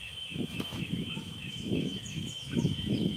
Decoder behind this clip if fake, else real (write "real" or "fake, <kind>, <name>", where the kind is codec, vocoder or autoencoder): fake, autoencoder, DAC-VAE